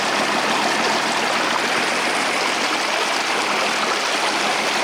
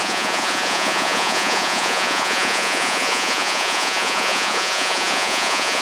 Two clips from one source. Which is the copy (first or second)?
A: second